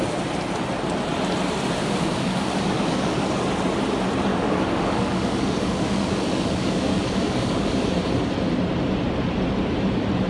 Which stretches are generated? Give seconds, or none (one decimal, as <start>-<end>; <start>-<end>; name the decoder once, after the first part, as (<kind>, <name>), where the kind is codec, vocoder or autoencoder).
1.8-3.3 (codec, DAC); 4.3-7.9